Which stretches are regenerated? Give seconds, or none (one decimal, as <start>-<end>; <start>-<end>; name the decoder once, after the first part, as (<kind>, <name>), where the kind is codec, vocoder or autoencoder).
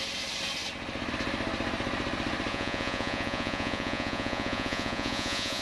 2.5-5.6 (vocoder, Vocos)